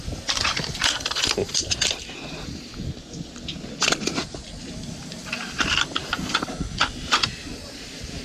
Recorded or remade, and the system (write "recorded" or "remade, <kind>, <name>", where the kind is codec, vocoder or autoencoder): recorded